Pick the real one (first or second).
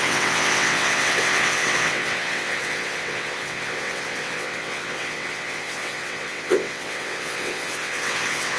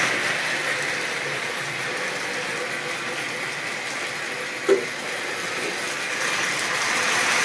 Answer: second